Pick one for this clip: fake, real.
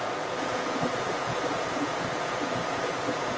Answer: fake